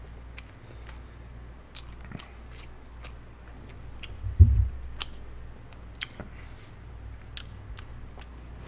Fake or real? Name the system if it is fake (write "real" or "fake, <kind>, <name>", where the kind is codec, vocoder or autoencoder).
real